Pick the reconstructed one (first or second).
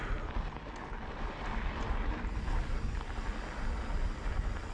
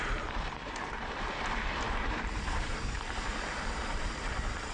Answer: second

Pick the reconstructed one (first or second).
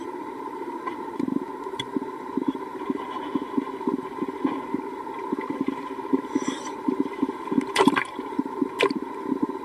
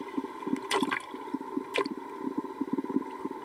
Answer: first